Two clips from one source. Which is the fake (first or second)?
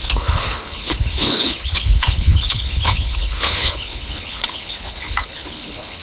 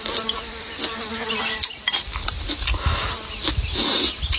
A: first